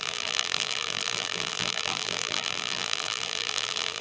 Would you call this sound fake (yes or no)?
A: yes